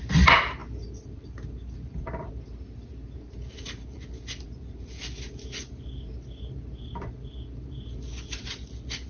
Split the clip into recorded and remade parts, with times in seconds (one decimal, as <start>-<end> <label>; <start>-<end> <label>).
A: 0.0-9.1 recorded